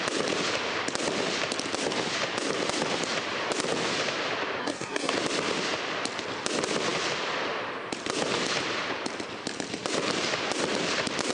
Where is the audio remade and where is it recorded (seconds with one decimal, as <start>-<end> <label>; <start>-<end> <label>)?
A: 0.0-4.6 recorded; 4.6-5.1 remade; 5.1-11.3 recorded